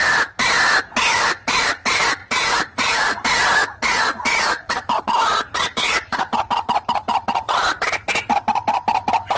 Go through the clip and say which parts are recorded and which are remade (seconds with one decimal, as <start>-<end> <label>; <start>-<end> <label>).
0.0-2.2 recorded; 2.2-3.2 remade; 3.2-3.6 recorded; 3.6-7.8 remade; 7.8-9.4 recorded